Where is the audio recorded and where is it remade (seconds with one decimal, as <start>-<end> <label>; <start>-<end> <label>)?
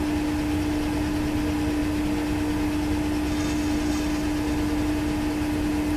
0.0-6.0 recorded